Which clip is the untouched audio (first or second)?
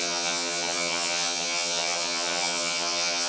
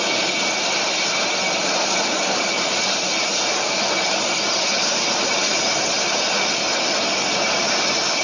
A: second